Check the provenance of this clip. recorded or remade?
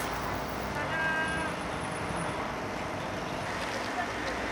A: recorded